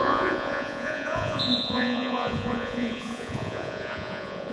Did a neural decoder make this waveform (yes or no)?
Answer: yes